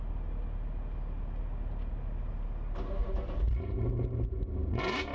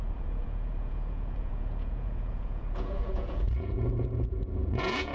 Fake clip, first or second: second